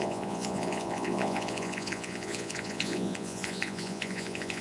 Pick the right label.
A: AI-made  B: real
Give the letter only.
A